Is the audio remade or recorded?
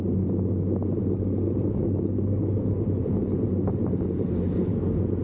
recorded